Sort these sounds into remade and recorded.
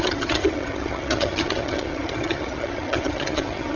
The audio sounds remade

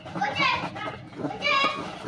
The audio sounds recorded